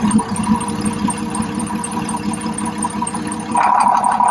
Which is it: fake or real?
fake